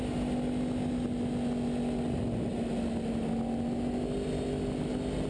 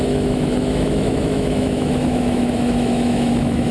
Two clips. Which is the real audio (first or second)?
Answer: first